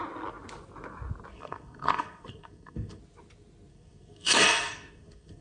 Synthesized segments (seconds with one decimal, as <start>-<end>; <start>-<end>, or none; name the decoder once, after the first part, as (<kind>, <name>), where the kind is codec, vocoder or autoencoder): 1.3-3.0 (codec, SNAC); 3.7-5.4